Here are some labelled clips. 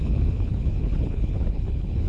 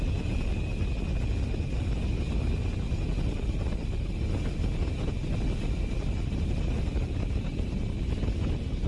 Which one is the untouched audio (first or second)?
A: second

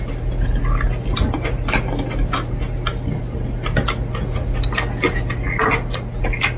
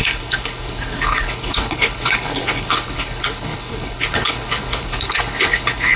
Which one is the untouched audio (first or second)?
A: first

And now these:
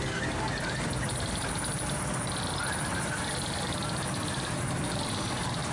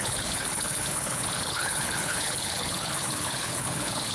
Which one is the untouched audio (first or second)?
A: first